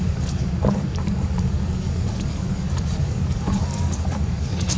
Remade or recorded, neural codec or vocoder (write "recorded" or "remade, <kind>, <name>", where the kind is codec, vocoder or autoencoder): remade, codec, DAC